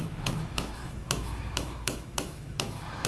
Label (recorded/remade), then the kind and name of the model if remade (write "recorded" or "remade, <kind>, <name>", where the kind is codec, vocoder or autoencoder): remade, autoencoder, DAC-VAE